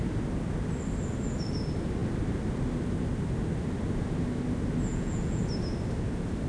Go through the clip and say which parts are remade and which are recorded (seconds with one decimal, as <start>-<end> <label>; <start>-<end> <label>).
0.0-4.9 recorded; 4.9-5.4 remade; 5.4-6.5 recorded